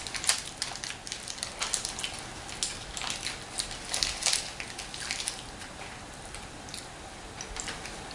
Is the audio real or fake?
real